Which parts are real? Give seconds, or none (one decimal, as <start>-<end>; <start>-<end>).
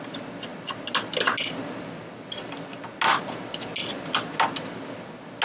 0.0-5.4